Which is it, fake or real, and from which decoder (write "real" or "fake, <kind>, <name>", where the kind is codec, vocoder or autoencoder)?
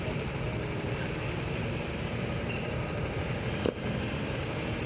real